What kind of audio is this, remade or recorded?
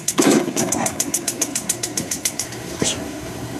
remade